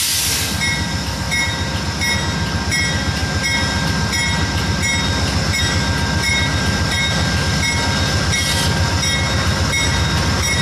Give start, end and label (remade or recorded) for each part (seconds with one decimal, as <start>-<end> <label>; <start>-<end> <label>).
0.0-10.6 recorded